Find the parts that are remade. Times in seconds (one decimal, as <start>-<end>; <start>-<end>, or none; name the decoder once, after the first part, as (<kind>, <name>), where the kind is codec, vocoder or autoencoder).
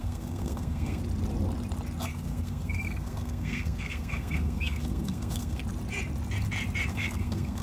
0.0-1.0 (codec, SNAC); 2.0-5.6; 6.9-7.6